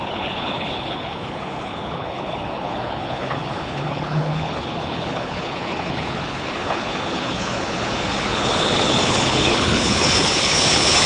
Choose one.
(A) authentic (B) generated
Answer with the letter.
B